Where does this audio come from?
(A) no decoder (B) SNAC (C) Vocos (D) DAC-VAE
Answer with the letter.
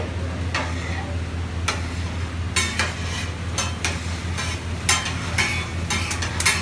A